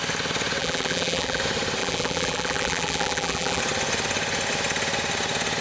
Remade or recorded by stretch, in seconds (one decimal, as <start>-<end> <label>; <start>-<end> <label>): 0.0-0.6 recorded; 0.6-1.4 remade; 1.4-1.8 recorded; 1.8-3.6 remade; 3.6-5.6 recorded